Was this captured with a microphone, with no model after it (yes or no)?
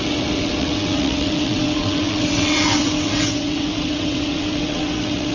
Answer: no